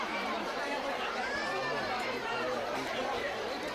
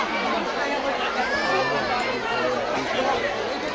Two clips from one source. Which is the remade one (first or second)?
first